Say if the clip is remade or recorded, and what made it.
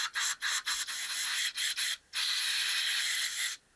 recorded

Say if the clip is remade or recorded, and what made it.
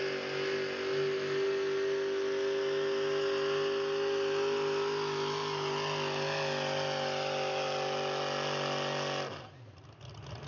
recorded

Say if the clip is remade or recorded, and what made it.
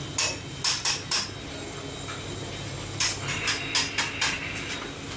recorded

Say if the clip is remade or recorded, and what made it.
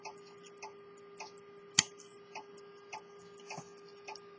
recorded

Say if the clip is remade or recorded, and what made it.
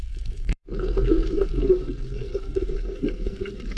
remade, codec, SNAC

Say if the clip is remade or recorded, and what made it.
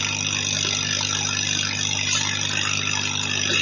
recorded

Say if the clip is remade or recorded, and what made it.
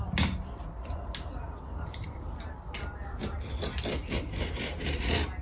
recorded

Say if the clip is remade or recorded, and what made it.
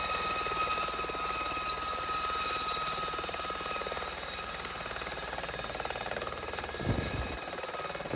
recorded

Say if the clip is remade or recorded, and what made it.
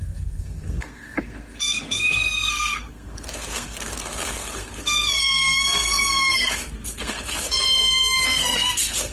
remade, codec, SNAC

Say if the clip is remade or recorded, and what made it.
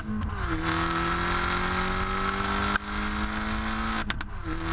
recorded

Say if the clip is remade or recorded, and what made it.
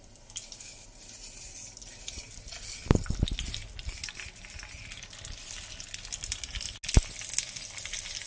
recorded